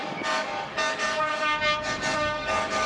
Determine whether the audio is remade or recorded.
remade